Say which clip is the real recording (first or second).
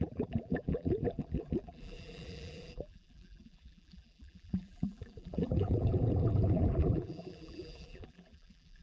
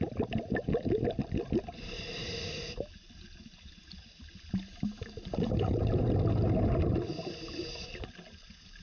second